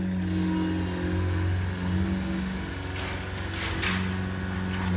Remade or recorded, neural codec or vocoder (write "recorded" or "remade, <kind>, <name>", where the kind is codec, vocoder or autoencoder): recorded